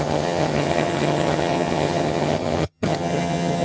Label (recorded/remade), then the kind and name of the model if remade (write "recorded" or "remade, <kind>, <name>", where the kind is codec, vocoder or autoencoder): remade, vocoder, HiFi-GAN